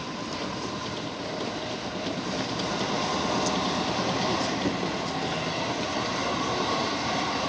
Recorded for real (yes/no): yes